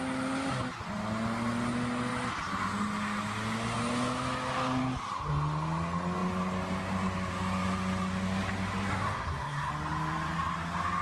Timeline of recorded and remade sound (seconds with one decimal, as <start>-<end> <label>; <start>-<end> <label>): 0.0-8.9 recorded; 8.9-9.7 remade; 9.7-11.0 recorded